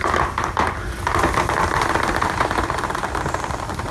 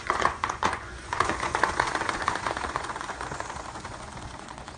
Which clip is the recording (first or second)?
first